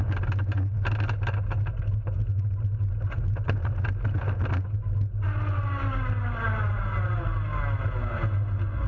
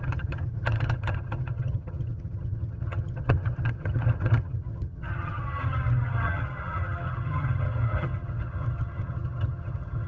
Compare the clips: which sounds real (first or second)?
first